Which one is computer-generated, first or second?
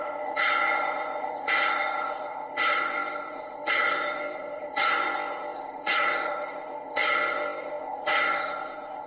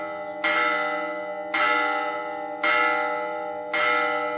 first